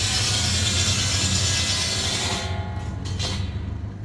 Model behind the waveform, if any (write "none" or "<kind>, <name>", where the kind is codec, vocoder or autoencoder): none